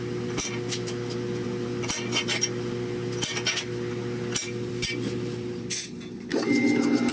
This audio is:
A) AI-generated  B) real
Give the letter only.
B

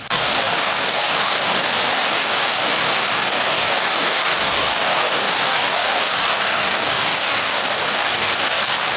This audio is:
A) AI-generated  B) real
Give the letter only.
A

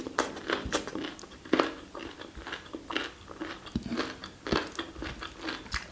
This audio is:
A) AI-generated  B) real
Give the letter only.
B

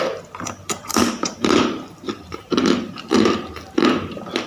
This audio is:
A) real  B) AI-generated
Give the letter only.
B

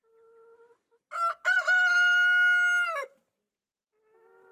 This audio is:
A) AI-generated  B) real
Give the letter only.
B